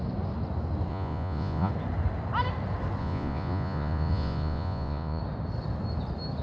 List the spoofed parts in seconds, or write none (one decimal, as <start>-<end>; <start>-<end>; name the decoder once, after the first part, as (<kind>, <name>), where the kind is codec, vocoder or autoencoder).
0.9-1.7 (vocoder, Vocos); 3.0-5.2